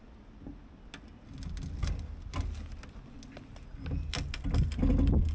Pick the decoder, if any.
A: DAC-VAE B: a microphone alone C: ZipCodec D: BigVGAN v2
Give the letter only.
B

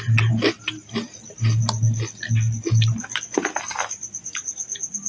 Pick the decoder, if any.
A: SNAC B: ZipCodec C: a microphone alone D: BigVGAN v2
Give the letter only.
C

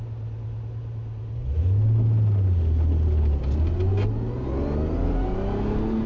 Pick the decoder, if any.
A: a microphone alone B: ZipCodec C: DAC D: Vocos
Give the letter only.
A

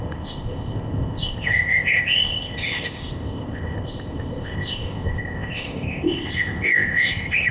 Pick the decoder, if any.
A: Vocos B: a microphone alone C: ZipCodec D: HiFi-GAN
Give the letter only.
C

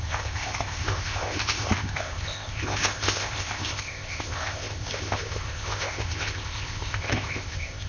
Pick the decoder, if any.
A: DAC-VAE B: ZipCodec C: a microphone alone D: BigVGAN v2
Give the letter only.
B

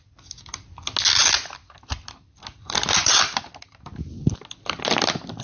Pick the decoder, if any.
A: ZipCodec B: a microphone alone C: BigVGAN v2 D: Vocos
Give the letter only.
B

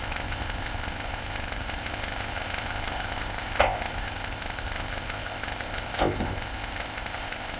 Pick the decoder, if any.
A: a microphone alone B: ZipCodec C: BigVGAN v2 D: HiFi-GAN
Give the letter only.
B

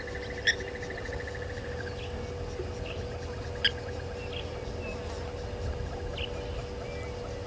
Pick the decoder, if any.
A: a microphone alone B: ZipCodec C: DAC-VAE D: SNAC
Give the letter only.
A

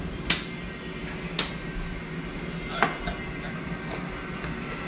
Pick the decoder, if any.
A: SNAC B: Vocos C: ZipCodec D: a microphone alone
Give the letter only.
D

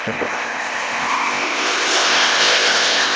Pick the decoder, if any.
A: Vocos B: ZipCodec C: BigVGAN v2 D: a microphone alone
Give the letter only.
B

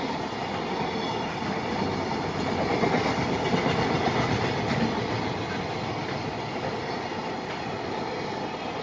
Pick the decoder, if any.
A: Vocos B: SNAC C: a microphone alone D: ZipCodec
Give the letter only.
C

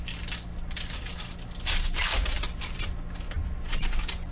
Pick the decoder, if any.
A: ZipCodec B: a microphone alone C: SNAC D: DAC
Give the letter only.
B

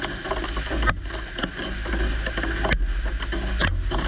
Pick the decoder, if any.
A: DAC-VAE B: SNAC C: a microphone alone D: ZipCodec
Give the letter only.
C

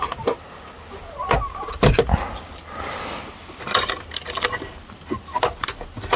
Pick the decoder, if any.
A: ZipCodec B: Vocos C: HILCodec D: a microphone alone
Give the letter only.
D